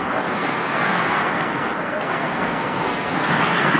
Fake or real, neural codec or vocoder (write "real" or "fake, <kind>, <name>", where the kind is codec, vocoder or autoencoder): fake, codec, SNAC